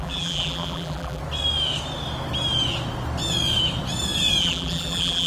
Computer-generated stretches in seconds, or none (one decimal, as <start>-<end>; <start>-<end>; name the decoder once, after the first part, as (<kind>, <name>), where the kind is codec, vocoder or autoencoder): 0.0-1.2 (vocoder, BigVGAN v2); 4.4-5.3